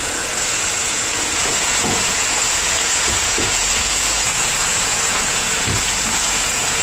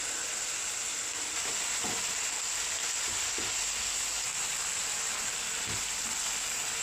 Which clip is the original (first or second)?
second